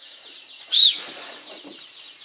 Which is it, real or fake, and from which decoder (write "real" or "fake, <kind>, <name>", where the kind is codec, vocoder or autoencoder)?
fake, vocoder, Vocos